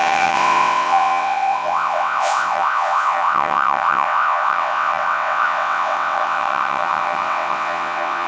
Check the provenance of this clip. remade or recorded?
remade